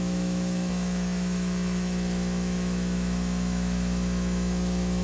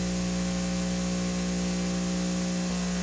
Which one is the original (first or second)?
second